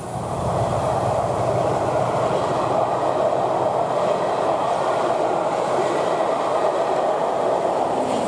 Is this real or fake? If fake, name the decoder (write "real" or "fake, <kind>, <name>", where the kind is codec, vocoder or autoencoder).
real